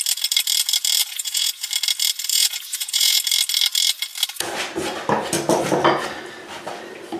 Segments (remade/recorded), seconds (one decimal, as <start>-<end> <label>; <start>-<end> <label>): 0.0-1.0 recorded; 1.0-1.7 remade; 1.7-2.3 recorded; 2.3-3.2 remade; 3.2-7.2 recorded